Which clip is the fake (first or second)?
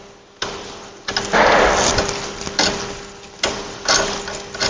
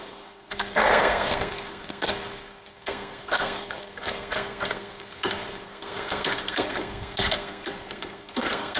second